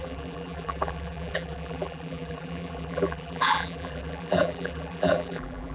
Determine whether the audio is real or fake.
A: fake